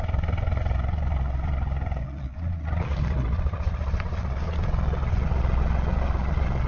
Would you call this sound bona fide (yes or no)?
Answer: no